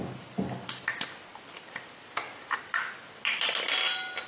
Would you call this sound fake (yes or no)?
no